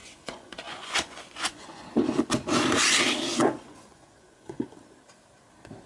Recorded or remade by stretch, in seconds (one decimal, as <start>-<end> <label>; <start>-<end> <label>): 0.0-2.0 remade; 2.0-3.3 recorded; 3.3-4.6 remade; 4.6-5.9 recorded